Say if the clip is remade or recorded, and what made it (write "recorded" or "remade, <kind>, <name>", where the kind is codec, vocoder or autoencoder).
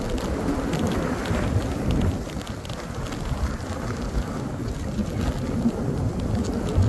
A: recorded